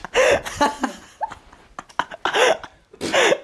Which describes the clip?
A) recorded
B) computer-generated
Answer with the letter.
A